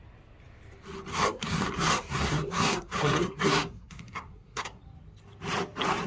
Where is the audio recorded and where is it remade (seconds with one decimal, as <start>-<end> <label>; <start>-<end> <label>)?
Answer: 0.0-1.1 recorded; 1.1-4.8 remade; 4.8-6.1 recorded

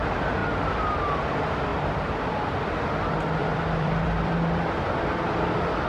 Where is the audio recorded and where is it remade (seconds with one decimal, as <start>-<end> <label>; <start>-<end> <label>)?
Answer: 0.0-0.4 recorded; 0.4-1.1 remade; 1.1-1.7 recorded; 1.7-2.5 remade; 2.5-3.4 recorded; 3.4-5.5 remade; 5.5-5.9 recorded

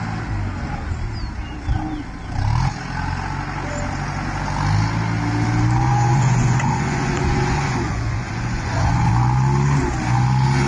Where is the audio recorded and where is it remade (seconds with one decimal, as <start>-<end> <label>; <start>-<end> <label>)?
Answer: 0.0-5.9 recorded; 5.9-9.1 remade; 9.1-10.7 recorded

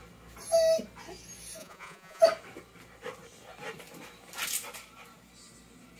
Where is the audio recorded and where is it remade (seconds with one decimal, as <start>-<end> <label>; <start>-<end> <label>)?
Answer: 0.0-1.6 recorded; 1.6-2.2 remade; 2.2-6.0 recorded

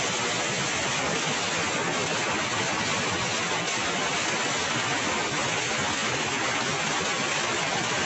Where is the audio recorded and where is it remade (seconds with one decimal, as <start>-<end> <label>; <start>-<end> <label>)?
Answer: 0.0-8.1 recorded

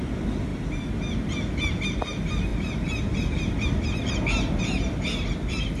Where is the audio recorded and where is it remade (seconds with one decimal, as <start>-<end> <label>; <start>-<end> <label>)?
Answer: 0.0-5.8 recorded

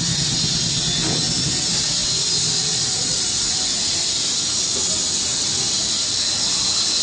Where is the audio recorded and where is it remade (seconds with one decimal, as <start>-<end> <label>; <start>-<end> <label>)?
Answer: 0.0-2.0 recorded; 2.0-4.8 remade; 4.8-5.3 recorded; 5.3-7.0 remade